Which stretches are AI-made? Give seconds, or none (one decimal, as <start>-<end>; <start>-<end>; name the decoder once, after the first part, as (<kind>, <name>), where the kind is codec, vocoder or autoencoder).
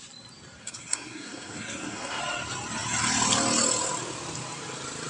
0.6-2.2 (codec, SNAC)